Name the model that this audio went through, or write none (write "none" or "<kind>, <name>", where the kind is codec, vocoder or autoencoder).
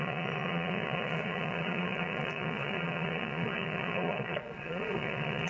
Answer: vocoder, Vocos